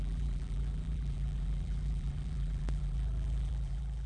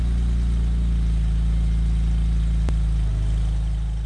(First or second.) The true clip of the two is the second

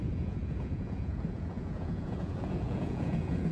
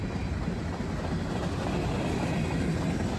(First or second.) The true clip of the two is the second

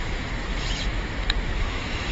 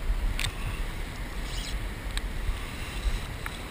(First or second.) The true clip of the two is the second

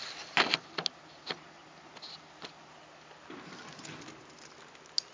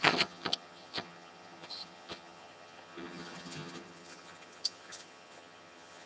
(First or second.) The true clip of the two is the first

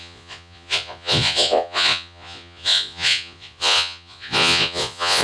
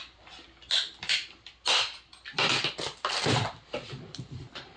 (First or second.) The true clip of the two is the second